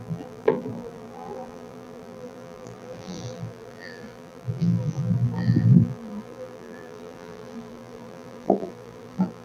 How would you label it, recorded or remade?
remade